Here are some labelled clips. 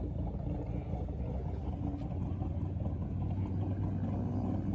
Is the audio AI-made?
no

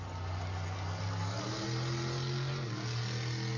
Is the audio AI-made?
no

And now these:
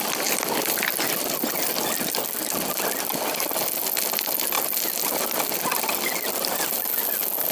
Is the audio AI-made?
no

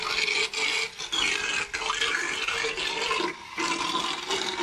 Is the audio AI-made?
no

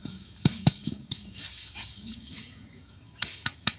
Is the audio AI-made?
yes